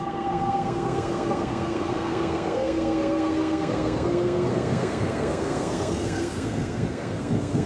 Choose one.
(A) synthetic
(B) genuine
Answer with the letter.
A